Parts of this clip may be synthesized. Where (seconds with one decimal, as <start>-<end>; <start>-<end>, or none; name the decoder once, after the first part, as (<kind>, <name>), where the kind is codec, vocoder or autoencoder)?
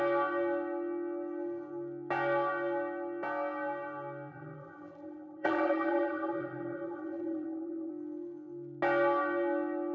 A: 4.3-7.9 (vocoder, BigVGAN v2)